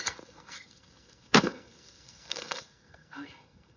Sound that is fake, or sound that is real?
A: fake